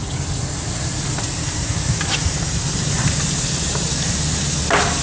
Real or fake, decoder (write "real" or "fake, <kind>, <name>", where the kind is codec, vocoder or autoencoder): real